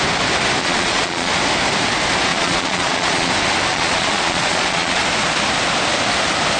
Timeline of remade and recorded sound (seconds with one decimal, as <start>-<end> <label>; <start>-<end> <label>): 0.0-0.6 recorded; 0.6-1.3 remade; 1.3-2.3 recorded; 2.3-3.3 remade; 3.3-3.7 recorded; 3.7-5.0 remade; 5.0-6.6 recorded